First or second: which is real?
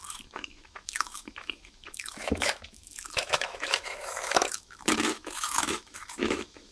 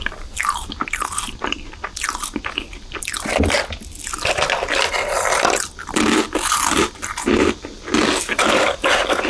second